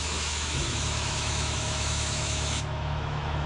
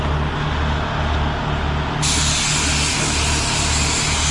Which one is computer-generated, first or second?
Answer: first